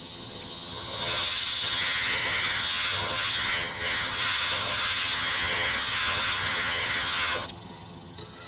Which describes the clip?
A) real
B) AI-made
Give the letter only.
B